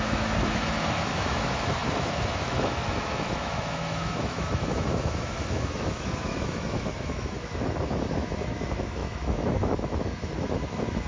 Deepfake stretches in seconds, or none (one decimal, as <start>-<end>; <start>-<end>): 0.0-11.1